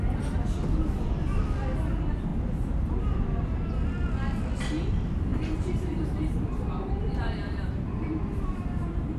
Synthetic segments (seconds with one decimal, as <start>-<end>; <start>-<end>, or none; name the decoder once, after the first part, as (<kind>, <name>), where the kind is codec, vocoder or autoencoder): 5.3-9.2 (vocoder, BigVGAN v2)